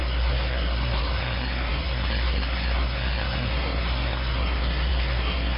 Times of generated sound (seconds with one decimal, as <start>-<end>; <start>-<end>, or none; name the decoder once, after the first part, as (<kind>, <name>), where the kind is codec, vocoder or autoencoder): 0.0-5.6 (codec, SNAC)